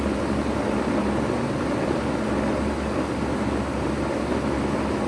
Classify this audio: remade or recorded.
recorded